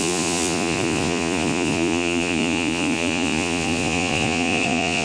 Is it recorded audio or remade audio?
remade